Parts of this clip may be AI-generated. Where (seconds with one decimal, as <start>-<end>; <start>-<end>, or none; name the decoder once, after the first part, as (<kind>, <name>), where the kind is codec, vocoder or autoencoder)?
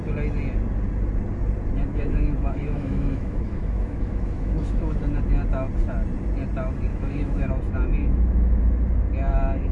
1.9-5.0 (autoencoder, DAC-VAE); 6.9-7.5; 8.0-8.6